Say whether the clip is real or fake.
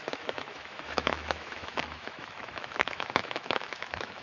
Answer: fake